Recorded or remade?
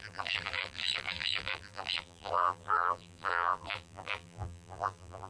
remade